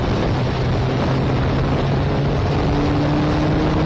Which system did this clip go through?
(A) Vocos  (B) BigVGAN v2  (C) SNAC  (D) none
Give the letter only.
D